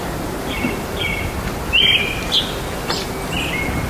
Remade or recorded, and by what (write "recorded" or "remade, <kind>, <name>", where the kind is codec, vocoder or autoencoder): recorded